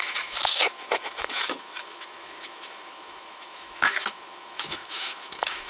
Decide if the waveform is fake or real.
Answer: fake